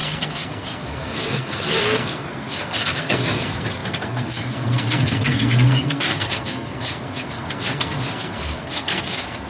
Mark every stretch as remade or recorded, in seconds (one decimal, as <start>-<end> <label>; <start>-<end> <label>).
0.0-9.5 remade